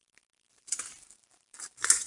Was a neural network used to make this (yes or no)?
yes